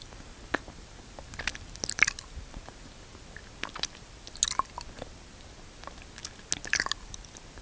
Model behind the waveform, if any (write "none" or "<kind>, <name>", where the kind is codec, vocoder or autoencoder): none